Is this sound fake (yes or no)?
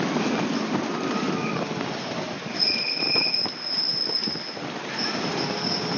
no